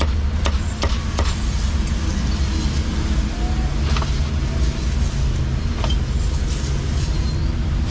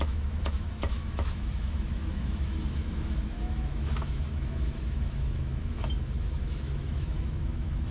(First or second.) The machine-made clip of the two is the second